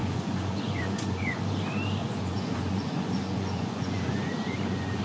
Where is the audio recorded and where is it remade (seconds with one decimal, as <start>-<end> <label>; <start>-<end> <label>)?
0.0-1.4 remade; 1.4-2.0 recorded; 2.0-5.0 remade

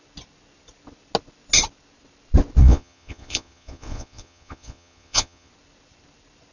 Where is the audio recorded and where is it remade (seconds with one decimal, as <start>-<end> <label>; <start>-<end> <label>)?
0.0-2.6 recorded; 2.6-5.5 remade; 5.5-6.5 recorded

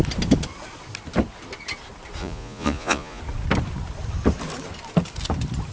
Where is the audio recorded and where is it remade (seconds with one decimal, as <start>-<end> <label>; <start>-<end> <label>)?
0.0-2.2 recorded; 2.2-3.2 remade; 3.2-5.7 recorded

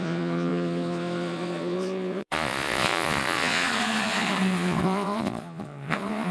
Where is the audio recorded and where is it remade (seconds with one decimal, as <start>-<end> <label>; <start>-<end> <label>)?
0.0-6.3 remade